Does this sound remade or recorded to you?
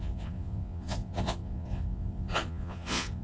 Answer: remade